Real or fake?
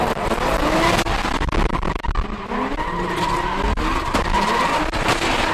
real